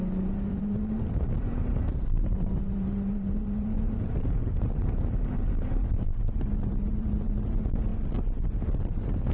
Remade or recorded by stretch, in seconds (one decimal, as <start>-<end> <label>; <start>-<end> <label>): 0.0-7.9 remade; 7.9-8.8 recorded; 8.8-9.3 remade